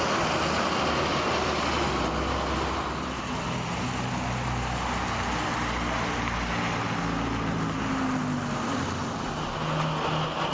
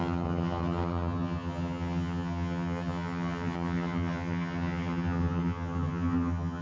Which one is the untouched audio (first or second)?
first